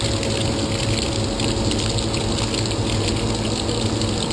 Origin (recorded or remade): recorded